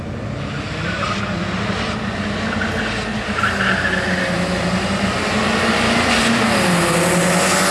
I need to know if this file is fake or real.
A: real